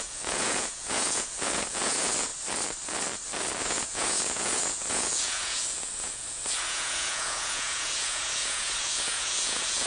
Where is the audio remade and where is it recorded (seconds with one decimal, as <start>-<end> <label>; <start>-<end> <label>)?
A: 0.0-2.3 remade; 2.3-3.6 recorded; 3.6-9.9 remade